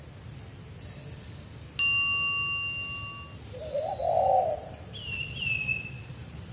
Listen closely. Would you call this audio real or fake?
real